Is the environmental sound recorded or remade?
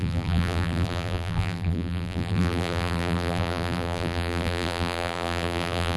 remade